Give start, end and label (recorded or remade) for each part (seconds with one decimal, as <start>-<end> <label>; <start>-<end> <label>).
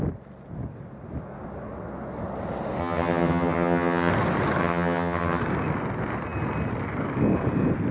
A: 0.0-2.8 recorded; 2.8-4.1 remade; 4.1-4.6 recorded; 4.6-5.4 remade; 5.4-7.9 recorded